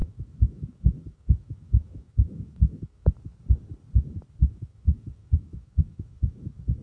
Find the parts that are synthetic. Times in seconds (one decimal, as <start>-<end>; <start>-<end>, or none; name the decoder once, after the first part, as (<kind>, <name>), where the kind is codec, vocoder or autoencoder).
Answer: 0.0-3.1 (autoencoder, DAC-VAE); 4.4-6.8